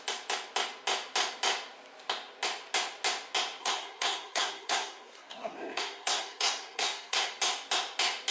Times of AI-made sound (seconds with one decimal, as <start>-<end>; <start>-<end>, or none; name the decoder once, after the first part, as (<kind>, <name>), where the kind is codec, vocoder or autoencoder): 3.6-7.3 (codec, SNAC)